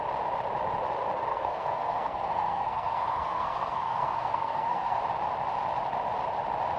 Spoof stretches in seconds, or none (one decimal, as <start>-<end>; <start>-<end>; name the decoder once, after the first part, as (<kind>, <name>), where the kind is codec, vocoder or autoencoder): 1.3-5.0 (codec, SNAC)